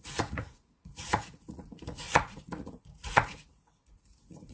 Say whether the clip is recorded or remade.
remade